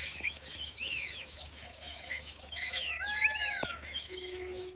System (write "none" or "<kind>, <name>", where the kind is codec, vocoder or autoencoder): autoencoder, DAC-VAE